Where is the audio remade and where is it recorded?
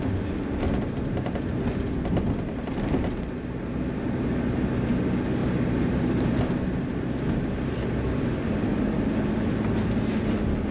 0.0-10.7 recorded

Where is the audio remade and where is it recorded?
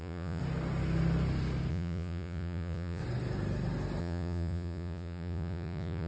0.0-0.4 remade; 0.4-1.7 recorded; 1.7-3.0 remade; 3.0-4.0 recorded; 4.0-6.1 remade